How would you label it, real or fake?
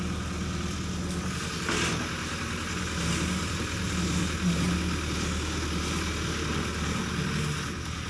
real